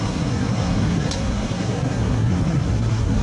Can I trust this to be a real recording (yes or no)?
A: no